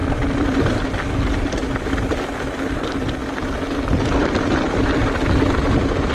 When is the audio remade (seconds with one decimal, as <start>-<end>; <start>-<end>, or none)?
0.0-1.1; 3.2-5.1